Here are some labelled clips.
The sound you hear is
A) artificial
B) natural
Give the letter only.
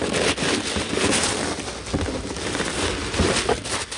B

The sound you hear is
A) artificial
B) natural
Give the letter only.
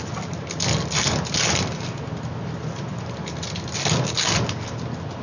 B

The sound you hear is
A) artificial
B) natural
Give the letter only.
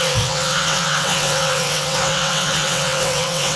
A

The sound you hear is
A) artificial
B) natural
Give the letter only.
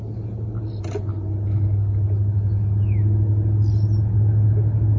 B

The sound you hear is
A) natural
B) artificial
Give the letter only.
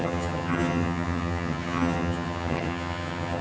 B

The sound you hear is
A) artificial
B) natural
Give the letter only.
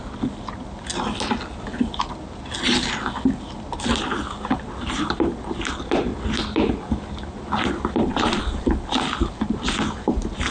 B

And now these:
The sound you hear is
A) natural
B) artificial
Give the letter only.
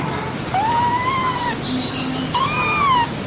A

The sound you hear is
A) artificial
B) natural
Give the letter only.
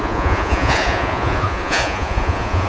A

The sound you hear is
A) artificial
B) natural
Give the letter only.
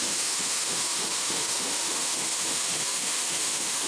A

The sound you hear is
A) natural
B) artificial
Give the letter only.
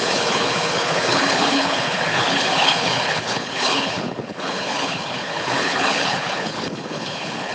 B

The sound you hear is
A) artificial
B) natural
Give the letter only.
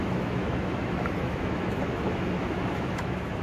A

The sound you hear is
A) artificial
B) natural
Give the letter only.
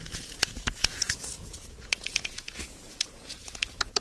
A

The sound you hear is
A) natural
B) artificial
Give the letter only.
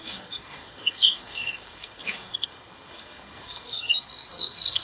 B